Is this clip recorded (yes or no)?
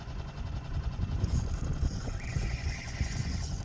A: no